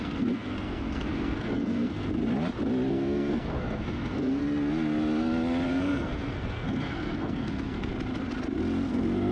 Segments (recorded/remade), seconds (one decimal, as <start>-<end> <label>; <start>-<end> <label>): 0.0-2.2 remade; 2.2-2.9 recorded; 2.9-4.4 remade; 4.4-5.7 recorded; 5.7-7.9 remade; 7.9-8.9 recorded; 8.9-9.3 remade